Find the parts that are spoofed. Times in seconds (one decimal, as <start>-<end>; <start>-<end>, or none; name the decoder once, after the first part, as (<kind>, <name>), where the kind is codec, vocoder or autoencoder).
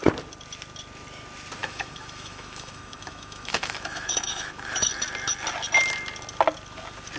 1.6-4.9 (autoencoder, DAC-VAE)